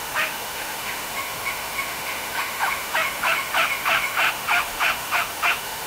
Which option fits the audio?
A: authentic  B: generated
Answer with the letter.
B